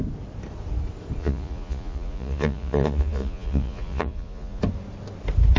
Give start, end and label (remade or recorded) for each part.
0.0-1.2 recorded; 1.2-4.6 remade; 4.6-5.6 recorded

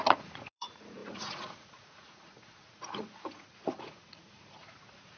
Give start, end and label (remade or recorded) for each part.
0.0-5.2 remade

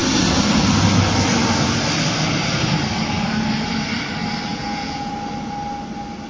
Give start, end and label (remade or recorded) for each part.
0.0-4.5 recorded; 4.5-5.1 remade; 5.1-6.3 recorded

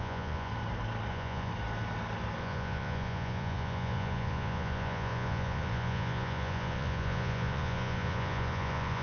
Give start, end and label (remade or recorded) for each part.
0.0-0.5 remade; 0.5-1.1 recorded; 1.1-1.5 remade; 1.5-2.4 recorded; 2.4-9.0 remade